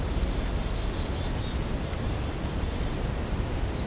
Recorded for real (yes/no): yes